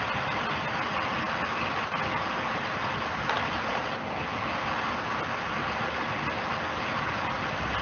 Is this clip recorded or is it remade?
recorded